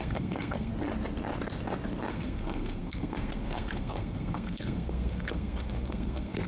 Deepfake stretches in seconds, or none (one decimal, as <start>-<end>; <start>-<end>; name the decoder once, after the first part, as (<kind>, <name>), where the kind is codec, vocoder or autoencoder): 0.0-0.7 (codec, SNAC); 2.1-6.5